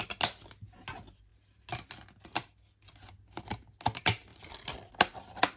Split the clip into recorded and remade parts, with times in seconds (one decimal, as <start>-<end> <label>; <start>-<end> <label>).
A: 0.0-5.6 recorded